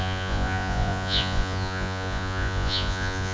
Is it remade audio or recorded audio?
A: remade